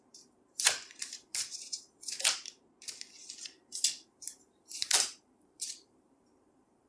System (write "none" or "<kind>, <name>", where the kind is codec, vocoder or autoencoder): vocoder, BigVGAN v2